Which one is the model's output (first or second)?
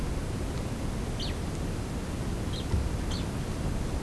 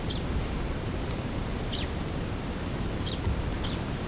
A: second